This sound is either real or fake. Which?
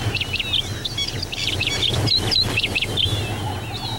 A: real